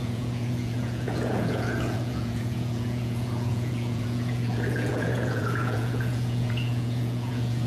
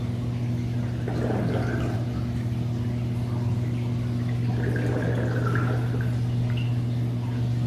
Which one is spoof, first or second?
first